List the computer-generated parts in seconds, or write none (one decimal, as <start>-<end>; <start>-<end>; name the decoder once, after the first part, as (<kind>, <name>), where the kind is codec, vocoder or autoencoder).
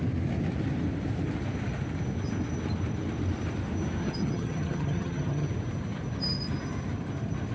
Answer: 4.0-5.5 (vocoder, HiFi-GAN)